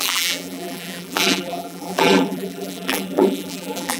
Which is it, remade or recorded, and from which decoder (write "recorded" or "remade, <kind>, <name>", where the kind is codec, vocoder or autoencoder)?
remade, vocoder, BigVGAN v2